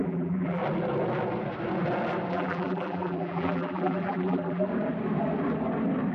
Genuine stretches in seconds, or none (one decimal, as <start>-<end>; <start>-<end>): 0.6-2.3; 4.7-6.1